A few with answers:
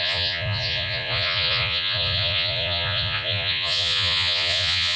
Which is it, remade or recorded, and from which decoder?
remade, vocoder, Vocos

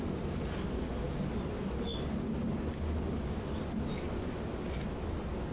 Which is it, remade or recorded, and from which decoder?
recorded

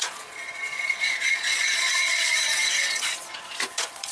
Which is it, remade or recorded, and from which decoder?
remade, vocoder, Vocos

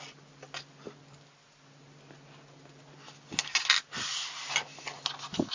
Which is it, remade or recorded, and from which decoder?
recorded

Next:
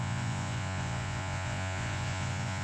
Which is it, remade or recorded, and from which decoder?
remade, vocoder, Vocos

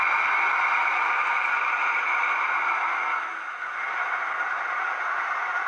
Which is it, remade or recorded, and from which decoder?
recorded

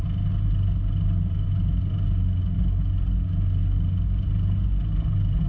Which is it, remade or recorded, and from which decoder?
recorded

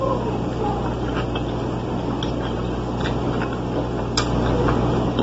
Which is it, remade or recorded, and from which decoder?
recorded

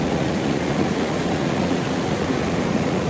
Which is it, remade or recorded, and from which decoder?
remade, vocoder, Vocos